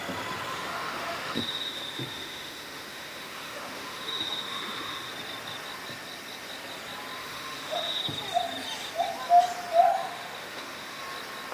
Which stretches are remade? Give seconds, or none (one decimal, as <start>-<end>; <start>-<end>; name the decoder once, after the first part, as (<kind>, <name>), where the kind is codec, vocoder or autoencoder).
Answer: 0.5-5.1 (autoencoder, DAC-VAE); 7.2-8.0; 9.9-11.0